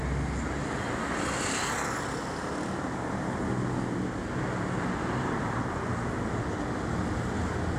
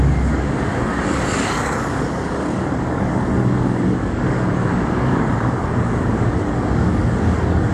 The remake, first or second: second